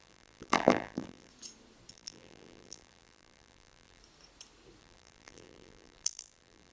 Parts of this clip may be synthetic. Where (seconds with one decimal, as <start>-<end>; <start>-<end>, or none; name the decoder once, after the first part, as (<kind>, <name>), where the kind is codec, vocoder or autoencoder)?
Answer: 0.0-1.3 (vocoder, BigVGAN v2); 1.9-4.0; 4.8-6.7